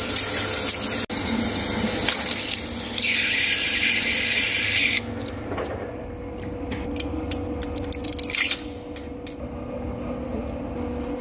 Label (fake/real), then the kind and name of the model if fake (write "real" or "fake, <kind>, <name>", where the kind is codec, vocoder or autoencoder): real